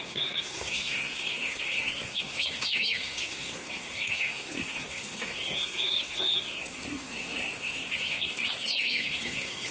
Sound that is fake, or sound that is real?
fake